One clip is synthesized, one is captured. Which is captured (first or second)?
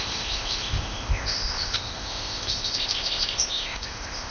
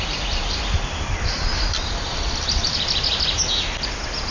second